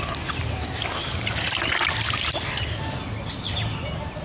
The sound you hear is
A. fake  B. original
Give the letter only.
B